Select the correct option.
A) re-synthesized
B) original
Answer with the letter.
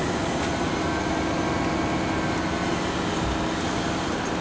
B